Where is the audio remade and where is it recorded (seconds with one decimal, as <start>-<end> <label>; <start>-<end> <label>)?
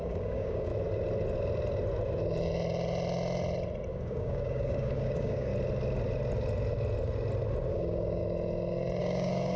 0.0-0.7 remade; 0.7-3.9 recorded; 3.9-5.5 remade; 5.5-7.7 recorded; 7.7-8.2 remade; 8.2-9.0 recorded; 9.0-9.6 remade